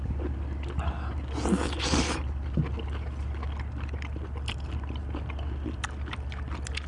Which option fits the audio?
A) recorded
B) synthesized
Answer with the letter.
A